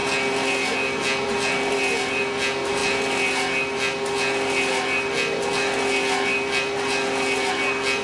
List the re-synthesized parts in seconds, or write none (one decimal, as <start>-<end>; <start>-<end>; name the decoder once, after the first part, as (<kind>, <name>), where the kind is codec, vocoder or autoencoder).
none